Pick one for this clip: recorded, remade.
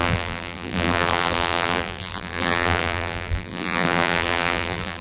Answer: remade